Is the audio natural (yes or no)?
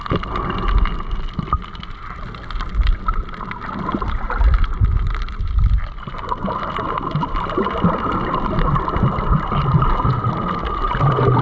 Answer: yes